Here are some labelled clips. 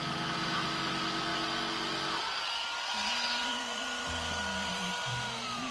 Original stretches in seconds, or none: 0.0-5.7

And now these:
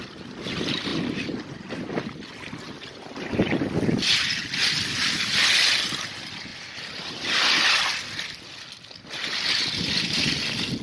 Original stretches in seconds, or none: 0.0-6.5; 8.4-10.8